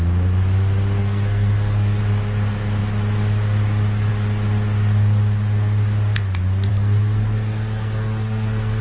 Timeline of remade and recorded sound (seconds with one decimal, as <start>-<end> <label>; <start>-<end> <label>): 0.0-1.0 recorded; 1.0-2.0 remade; 2.0-6.7 recorded; 6.7-8.8 remade